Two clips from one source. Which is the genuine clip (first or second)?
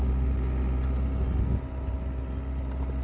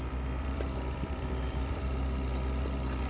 first